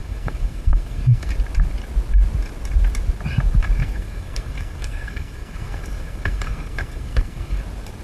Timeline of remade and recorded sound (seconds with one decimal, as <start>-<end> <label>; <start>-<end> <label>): 0.0-1.3 remade; 1.3-3.8 recorded; 3.8-7.6 remade; 7.6-8.0 recorded